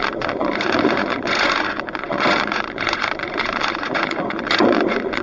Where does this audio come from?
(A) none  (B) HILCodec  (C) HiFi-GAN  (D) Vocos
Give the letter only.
D